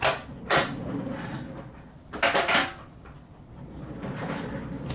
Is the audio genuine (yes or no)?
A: yes